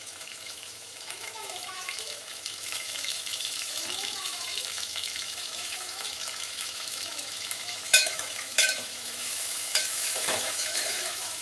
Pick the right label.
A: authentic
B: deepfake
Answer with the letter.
B